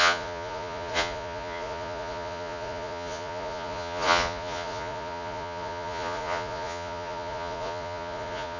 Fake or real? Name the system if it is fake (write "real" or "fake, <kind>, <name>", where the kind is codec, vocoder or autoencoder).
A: fake, vocoder, Vocos